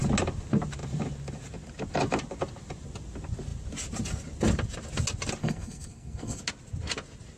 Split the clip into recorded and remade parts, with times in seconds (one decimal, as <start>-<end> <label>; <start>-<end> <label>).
0.0-5.4 recorded; 5.4-6.4 remade; 6.4-7.4 recorded